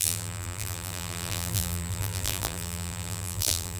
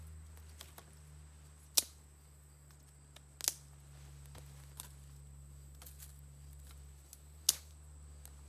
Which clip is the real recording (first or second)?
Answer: second